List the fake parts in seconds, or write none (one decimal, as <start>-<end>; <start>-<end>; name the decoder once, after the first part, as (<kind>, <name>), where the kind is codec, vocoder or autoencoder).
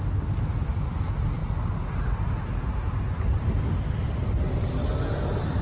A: none